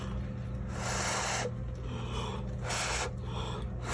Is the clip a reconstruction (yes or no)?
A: no